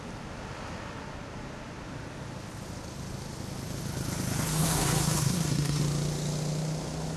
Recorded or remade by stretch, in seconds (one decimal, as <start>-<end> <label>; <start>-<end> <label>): 0.0-4.5 recorded; 4.5-5.8 remade; 5.8-7.2 recorded